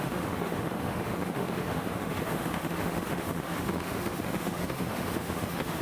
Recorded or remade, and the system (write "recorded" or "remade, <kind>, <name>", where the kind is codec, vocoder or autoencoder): remade, autoencoder, DAC-VAE